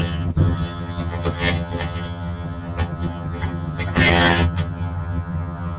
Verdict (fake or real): fake